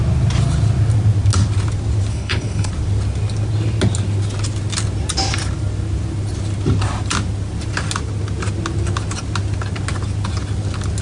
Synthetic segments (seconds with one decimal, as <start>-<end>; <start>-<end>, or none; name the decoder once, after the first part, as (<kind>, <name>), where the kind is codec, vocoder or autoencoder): 2.1-2.7 (codec, HILCodec)